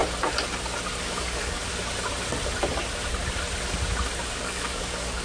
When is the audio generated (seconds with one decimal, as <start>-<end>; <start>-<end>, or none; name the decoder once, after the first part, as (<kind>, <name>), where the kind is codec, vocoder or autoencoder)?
1.0-1.6 (codec, DAC); 4.4-5.2